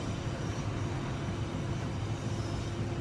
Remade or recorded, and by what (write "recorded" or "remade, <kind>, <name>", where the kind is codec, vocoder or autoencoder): recorded